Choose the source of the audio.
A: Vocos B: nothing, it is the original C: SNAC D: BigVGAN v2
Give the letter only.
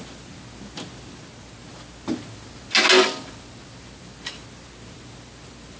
B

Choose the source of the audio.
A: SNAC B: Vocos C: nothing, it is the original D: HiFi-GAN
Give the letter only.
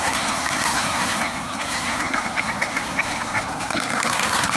A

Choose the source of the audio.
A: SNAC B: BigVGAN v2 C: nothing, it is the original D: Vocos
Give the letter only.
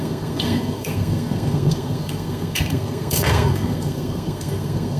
A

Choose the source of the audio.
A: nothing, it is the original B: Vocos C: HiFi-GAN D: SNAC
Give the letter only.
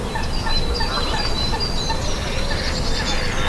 A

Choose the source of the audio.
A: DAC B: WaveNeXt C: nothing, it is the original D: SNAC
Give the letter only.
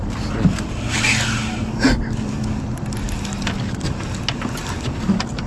C